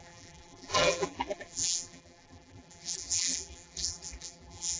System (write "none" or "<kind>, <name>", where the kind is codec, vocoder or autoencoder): vocoder, BigVGAN v2